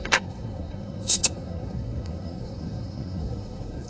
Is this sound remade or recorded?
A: remade